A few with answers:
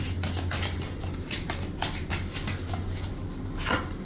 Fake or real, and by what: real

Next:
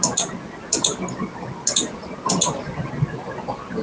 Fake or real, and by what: real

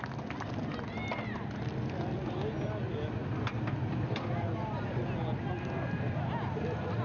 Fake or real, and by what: real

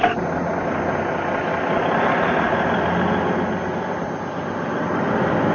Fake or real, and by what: real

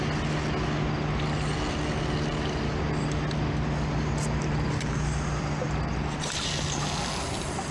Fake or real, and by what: real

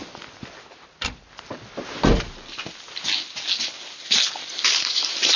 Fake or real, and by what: real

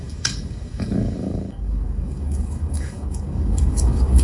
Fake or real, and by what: fake, codec, DAC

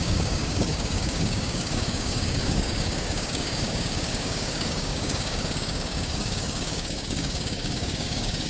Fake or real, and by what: fake, codec, DAC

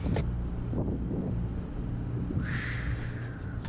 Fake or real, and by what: real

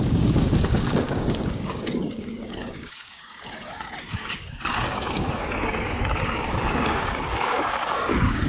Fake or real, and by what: fake, codec, DAC